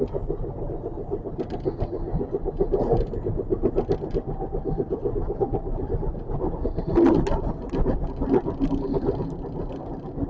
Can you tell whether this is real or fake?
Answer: real